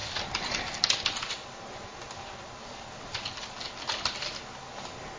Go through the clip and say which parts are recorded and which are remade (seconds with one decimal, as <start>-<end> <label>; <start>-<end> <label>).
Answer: 0.0-5.2 recorded